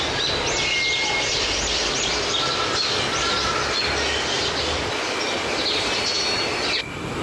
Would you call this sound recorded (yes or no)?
yes